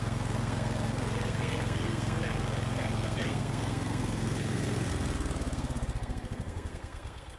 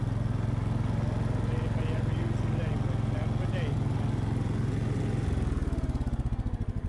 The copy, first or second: first